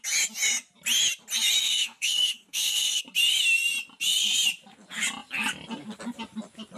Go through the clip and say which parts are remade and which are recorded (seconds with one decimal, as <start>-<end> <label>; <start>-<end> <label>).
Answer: 0.0-1.6 recorded; 1.6-3.0 remade; 3.0-6.8 recorded